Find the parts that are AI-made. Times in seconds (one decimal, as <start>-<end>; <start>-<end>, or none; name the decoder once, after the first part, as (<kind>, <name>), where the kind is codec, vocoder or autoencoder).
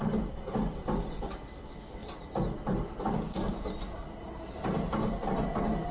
none